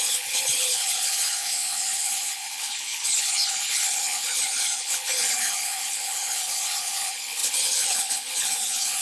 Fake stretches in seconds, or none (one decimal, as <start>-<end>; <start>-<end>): 0.0-9.0